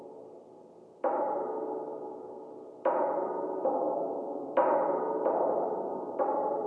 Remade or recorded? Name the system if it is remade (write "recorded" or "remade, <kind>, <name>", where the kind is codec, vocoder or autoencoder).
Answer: remade, vocoder, BigVGAN v2